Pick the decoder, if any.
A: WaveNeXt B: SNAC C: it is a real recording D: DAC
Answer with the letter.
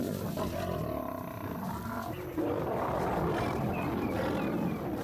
C